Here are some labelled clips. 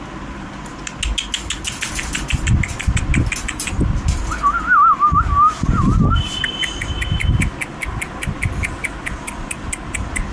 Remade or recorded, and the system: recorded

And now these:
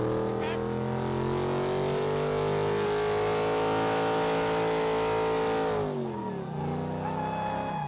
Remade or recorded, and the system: recorded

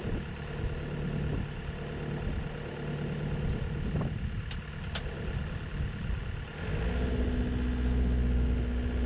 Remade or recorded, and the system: recorded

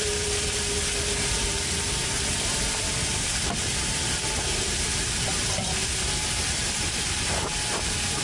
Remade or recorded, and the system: remade, vocoder, BigVGAN v2